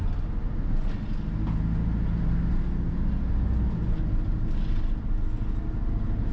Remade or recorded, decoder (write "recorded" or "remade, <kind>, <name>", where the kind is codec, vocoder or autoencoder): recorded